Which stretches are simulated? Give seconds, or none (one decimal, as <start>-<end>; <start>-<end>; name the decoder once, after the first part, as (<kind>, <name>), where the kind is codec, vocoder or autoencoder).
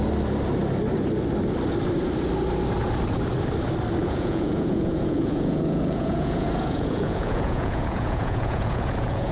4.0-9.3 (vocoder, Vocos)